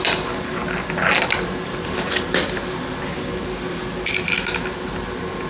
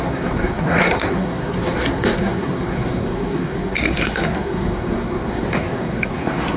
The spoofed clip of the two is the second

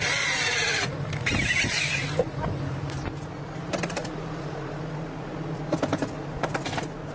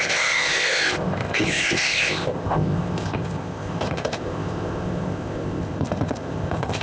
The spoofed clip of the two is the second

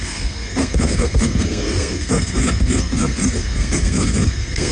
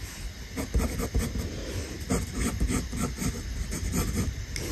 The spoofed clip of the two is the first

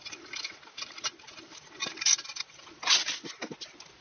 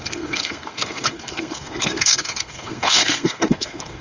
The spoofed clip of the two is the second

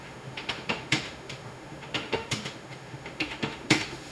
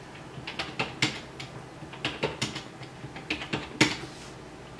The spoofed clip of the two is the first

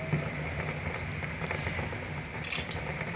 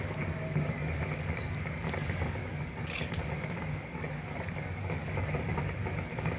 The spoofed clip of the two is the second